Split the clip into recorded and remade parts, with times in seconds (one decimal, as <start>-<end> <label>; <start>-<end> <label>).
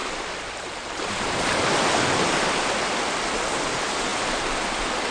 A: 0.0-5.1 recorded